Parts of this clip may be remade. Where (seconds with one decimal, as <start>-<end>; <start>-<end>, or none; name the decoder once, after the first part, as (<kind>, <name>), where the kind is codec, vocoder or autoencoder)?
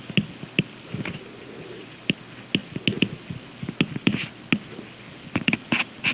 none